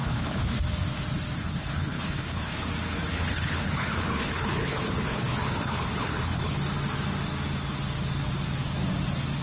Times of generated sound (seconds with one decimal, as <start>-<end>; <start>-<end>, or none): 0.0-0.6; 1.4-2.7; 3.1-6.6

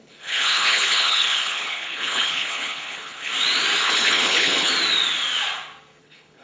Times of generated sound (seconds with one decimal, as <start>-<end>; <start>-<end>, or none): 0.0-3.3; 3.8-4.7; 6.0-6.4

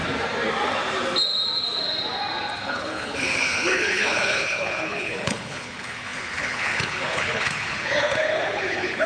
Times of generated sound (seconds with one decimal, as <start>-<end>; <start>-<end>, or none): 2.6-9.1

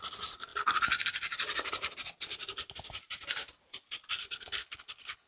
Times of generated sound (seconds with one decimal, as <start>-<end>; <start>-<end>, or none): 4.2-5.3

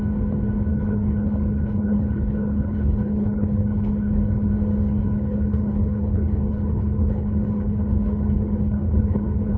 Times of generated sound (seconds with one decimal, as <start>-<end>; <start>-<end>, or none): 0.7-4.5; 4.9-9.6

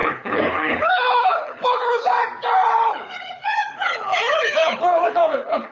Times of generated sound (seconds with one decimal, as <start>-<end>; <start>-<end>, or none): 0.0-2.1; 2.9-5.7